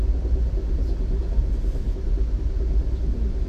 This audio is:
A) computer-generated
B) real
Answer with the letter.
B